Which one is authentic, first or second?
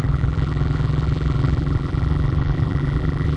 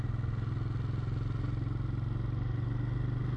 second